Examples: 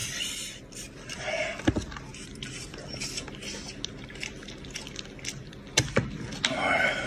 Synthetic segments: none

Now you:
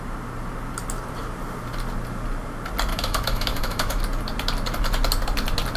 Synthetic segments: 2.9-4.0 (autoencoder, DAC-VAE)

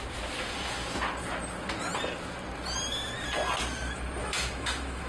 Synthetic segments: 4.2-5.1 (autoencoder, DAC-VAE)

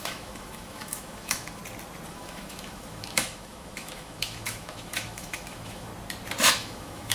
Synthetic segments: 0.0-1.6 (autoencoder, DAC-VAE); 2.1-5.9; 6.5-7.1

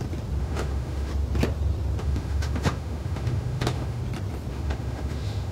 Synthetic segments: 0.4-1.1 (autoencoder, DAC-VAE); 2.0-4.0; 4.5-5.5

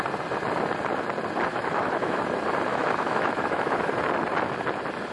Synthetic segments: 1.5-2.2 (autoencoder, DAC-VAE); 2.7-3.9

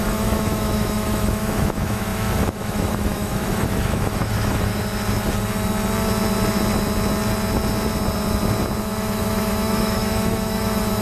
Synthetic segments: 0.0-4.7 (autoencoder, DAC-VAE); 8.8-11.0

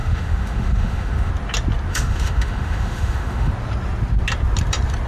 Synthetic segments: 0.0-1.3 (autoencoder, DAC-VAE); 1.9-3.5